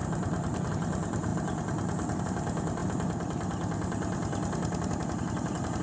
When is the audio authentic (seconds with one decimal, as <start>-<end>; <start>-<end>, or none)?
0.0-5.8